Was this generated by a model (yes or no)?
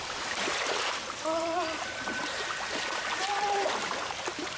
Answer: yes